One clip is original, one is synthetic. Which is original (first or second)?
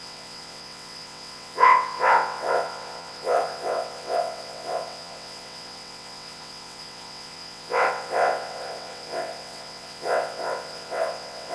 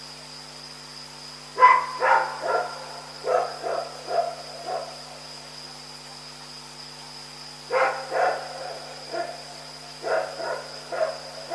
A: second